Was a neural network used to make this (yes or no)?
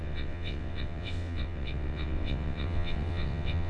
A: yes